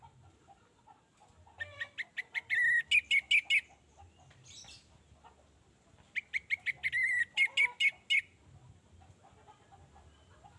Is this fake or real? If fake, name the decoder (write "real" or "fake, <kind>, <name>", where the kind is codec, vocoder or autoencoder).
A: real